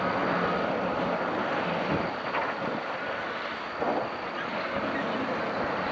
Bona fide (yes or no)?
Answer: yes